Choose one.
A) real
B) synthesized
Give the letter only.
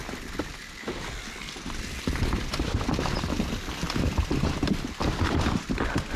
A